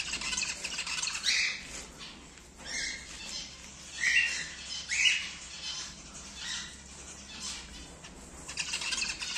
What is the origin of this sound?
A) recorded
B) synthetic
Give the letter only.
A